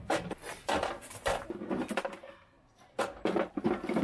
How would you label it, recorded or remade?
recorded